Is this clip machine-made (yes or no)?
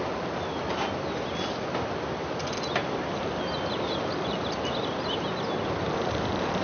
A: no